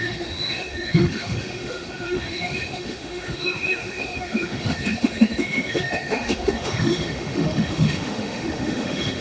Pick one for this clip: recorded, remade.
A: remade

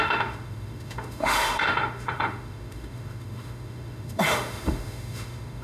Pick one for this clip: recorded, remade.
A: remade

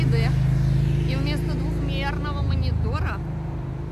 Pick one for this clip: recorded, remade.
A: recorded